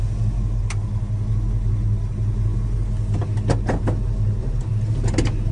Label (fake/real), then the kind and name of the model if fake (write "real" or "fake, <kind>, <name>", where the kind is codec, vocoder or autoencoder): real